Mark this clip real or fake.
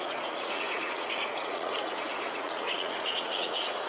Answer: fake